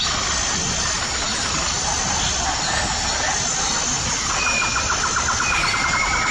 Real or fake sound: real